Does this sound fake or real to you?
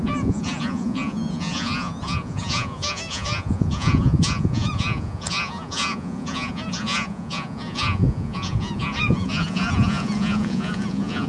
fake